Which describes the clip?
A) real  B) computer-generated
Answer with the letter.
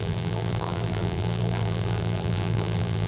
B